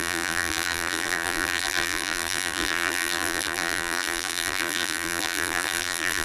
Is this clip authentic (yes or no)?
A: no